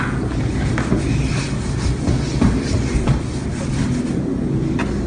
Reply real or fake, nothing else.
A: real